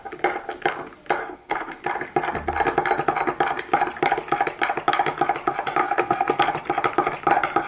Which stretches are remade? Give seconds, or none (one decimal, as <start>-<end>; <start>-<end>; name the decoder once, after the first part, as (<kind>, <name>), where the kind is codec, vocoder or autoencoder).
1.2-1.8 (codec, SNAC); 5.8-6.4